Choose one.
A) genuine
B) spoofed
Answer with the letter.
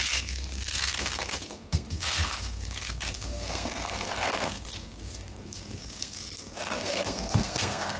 B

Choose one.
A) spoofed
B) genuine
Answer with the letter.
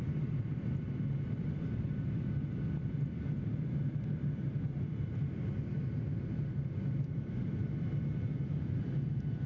A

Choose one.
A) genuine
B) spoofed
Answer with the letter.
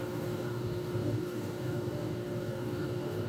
B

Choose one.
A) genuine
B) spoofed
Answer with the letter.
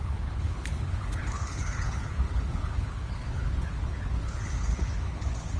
B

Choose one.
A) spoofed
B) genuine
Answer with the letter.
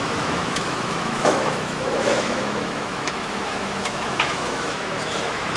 A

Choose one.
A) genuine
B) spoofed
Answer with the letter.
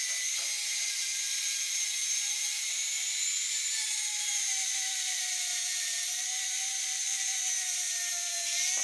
B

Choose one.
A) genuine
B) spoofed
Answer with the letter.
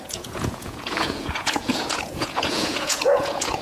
B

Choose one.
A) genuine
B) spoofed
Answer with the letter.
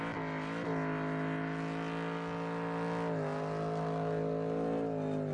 A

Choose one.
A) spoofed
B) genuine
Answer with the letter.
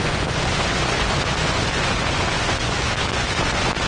A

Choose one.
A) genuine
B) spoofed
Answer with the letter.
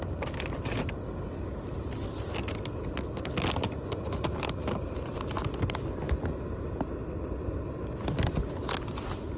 A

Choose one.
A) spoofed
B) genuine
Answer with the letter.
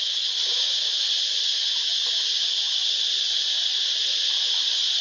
B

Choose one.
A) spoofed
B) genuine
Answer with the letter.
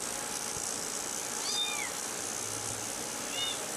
B